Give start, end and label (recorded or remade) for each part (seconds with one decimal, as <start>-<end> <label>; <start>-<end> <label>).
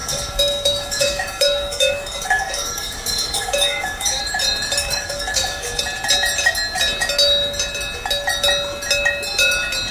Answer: 0.0-4.2 remade; 4.2-4.8 recorded; 4.8-5.8 remade; 5.8-9.9 recorded